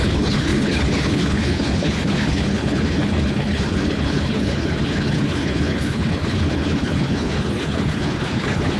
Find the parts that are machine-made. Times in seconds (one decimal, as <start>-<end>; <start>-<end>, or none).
0.0-8.8